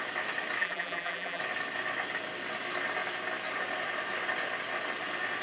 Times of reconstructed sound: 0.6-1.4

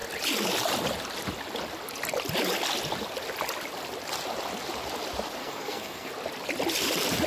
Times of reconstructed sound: 5.4-6.1

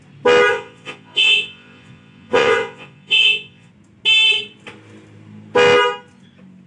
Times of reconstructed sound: 0.5-3.7

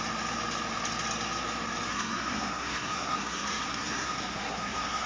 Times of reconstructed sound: 1.9-5.1

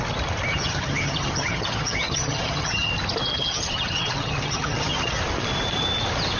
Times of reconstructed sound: 0.5-2.9; 3.3-5.2